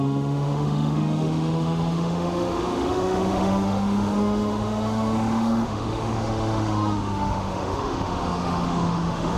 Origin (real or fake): fake